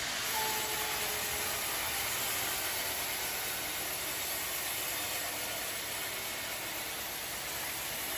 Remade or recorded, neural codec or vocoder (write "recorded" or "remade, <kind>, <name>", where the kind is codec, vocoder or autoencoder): recorded